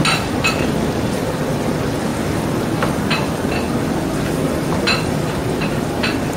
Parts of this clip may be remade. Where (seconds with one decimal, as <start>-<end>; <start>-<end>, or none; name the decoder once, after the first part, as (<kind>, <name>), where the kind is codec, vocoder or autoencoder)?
none